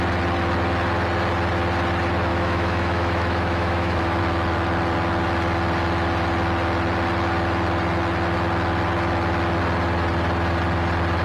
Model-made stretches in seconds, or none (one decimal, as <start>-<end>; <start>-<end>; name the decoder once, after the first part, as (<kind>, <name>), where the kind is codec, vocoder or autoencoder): 2.3-4.2 (autoencoder, DAC-VAE)